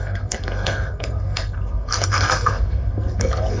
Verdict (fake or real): fake